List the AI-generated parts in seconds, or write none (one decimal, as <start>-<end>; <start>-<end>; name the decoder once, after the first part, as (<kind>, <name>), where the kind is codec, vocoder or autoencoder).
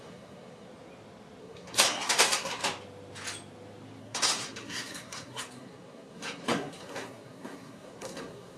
0.0-0.7 (codec, SNAC); 1.4-2.6; 4.0-8.6